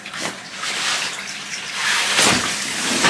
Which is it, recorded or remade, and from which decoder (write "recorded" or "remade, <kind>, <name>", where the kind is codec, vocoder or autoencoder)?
remade, vocoder, BigVGAN v2